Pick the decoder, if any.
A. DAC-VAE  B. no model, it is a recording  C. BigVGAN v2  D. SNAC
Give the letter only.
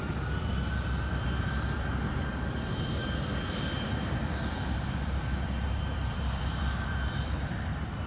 C